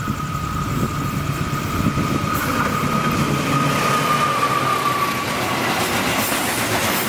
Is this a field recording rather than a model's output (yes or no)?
yes